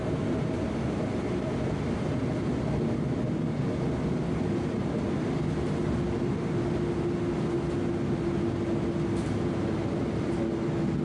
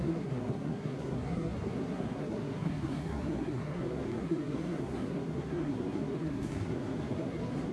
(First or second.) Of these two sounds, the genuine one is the first